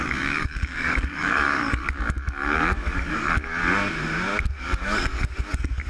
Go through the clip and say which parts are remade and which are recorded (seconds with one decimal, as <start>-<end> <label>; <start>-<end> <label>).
0.0-3.6 remade; 3.6-4.5 recorded; 4.5-5.9 remade